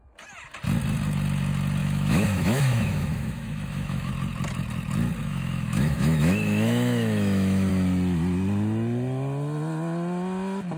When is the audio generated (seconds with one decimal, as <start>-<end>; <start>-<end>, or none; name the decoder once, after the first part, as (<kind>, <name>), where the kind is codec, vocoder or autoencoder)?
1.8-4.1 (autoencoder, DAC-VAE); 5.2-7.7